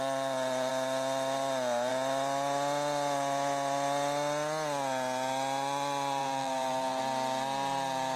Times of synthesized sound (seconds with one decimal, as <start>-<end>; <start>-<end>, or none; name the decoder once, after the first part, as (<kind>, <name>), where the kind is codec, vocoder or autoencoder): 6.2-7.0 (vocoder, BigVGAN v2)